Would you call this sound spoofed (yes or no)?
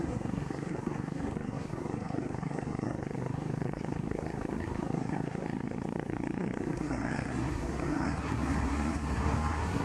yes